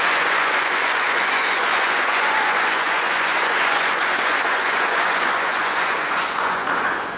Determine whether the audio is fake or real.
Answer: fake